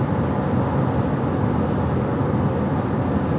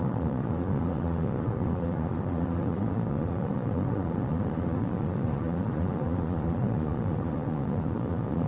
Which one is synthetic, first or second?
second